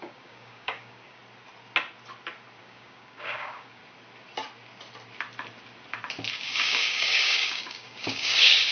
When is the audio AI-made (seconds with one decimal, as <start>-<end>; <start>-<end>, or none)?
0.0-1.2; 2.6-3.8; 6.3-8.7